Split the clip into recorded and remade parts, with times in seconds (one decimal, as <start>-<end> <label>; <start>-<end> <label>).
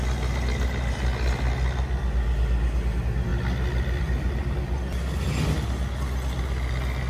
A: 0.0-7.1 recorded